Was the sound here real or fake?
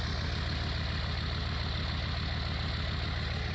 real